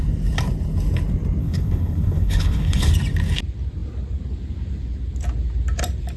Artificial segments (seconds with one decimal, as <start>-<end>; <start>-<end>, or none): 1.4-2.9